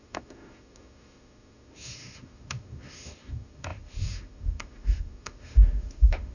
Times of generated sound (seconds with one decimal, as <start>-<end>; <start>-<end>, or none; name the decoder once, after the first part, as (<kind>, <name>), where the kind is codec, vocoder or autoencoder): 0.0-6.3 (autoencoder, DAC-VAE)